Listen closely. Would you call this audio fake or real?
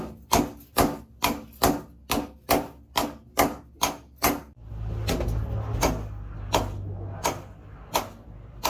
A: real